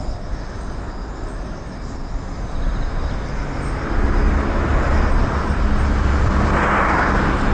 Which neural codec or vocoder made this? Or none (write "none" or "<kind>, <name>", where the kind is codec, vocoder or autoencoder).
none